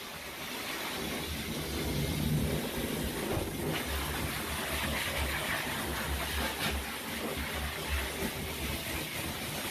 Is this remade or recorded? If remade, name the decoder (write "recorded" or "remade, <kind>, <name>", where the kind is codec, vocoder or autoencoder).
recorded